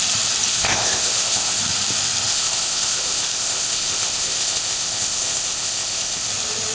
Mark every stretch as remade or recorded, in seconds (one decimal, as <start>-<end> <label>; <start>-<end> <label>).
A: 0.0-0.5 recorded; 0.5-1.6 remade; 1.6-2.3 recorded; 2.3-6.3 remade; 6.3-6.7 recorded